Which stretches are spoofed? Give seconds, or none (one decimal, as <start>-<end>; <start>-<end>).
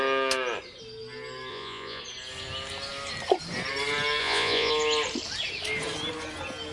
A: 1.5-2.0; 4.2-4.7